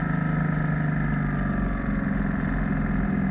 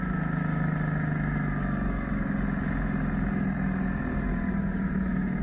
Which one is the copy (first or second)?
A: second